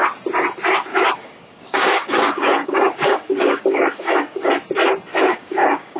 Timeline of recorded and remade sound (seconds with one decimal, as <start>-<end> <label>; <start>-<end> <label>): 0.0-0.9 recorded; 0.9-4.5 remade; 4.5-5.1 recorded; 5.1-6.0 remade